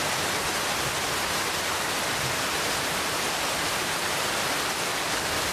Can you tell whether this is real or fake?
real